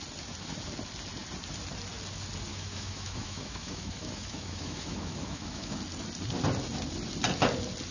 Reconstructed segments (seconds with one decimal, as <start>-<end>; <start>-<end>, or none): 2.5-5.8